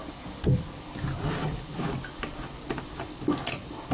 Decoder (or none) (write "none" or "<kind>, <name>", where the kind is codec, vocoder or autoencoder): none